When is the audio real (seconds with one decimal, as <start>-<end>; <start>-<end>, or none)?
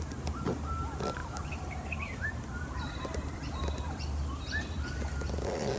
0.0-1.2; 2.3-5.8